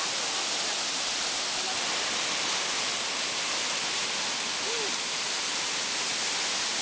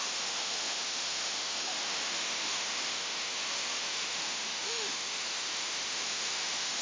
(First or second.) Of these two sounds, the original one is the first